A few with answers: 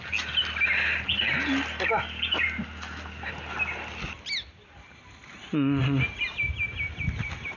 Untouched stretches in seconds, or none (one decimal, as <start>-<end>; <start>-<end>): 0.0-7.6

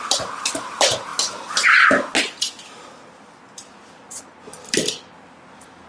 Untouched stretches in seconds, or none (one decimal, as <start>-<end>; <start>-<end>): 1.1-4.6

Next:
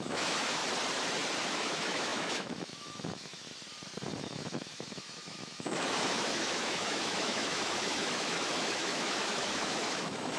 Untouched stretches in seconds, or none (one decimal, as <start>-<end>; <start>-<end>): 0.6-1.4; 3.5-4.2

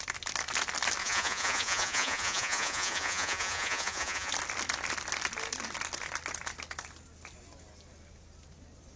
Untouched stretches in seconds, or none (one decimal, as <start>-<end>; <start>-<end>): 0.0-1.0; 4.3-9.0

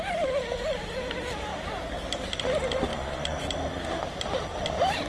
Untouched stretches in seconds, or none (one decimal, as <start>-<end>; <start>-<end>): 0.0-2.9; 3.5-5.1

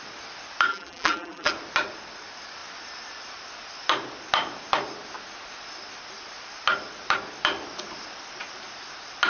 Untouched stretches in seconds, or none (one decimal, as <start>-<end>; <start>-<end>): 0.0-0.7; 1.5-9.3

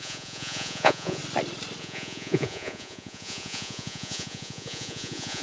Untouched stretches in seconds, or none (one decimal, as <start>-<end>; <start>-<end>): 1.2-1.8

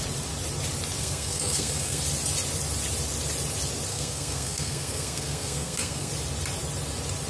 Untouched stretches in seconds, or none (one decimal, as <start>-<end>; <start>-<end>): 0.0-1.0; 2.0-3.9; 6.1-7.3